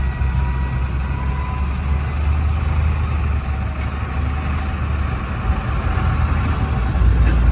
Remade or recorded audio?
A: recorded